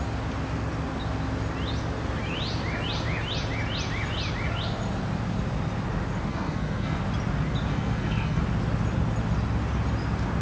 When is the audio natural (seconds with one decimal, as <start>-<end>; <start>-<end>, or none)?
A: 0.0-6.3; 7.0-7.7; 8.4-10.4